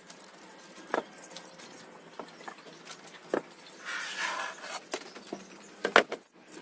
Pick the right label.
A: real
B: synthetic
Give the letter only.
A